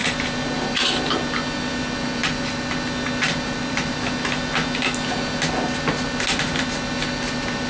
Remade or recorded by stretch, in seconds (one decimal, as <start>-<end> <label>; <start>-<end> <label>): 0.0-7.7 recorded